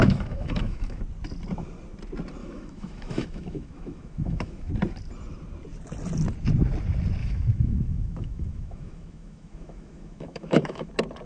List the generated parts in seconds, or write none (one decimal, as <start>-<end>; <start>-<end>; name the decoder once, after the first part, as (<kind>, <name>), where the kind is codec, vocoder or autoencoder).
0.0-1.0 (autoencoder, DAC-VAE); 2.4-4.7; 7.2-10.9